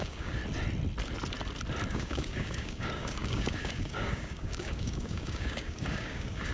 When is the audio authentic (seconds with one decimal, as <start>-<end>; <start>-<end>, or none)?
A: 0.4-1.9